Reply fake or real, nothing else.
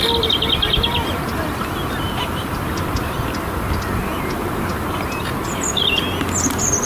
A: real